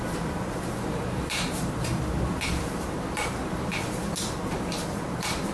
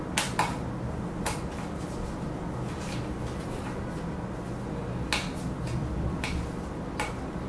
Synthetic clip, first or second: first